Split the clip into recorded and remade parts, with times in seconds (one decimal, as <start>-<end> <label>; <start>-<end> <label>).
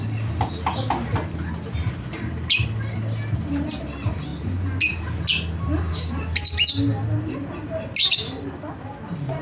0.0-9.4 recorded